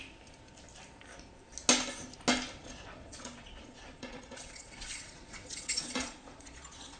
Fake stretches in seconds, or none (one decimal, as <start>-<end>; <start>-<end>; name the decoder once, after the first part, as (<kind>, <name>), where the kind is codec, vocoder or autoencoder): 2.6-7.0 (vocoder, Vocos)